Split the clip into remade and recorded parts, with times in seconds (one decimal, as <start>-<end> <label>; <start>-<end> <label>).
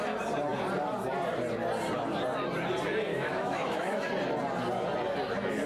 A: 0.0-3.1 recorded; 3.1-4.1 remade; 4.1-5.7 recorded